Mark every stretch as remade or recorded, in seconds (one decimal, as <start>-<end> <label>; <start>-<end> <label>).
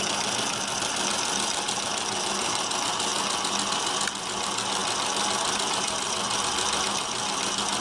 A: 0.0-7.8 recorded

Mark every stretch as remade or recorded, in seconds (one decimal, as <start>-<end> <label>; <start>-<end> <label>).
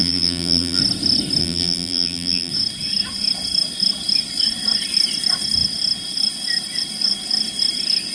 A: 0.0-0.8 remade; 0.8-1.4 recorded; 1.4-2.5 remade; 2.5-8.1 recorded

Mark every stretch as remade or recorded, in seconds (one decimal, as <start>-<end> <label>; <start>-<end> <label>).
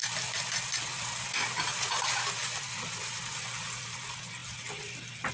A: 0.0-5.3 recorded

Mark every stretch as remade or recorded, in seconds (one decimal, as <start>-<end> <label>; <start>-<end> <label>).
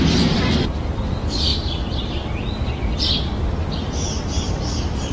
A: 0.0-1.5 remade; 1.5-4.5 recorded; 4.5-5.1 remade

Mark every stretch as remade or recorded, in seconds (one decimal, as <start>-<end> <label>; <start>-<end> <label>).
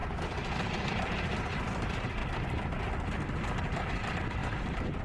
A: 0.0-0.9 recorded; 0.9-2.2 remade; 2.2-3.9 recorded; 3.9-5.0 remade